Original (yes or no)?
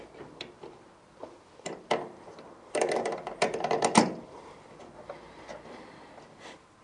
no